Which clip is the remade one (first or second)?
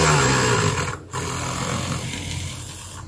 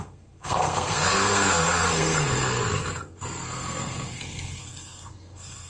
second